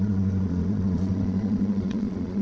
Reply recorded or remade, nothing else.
remade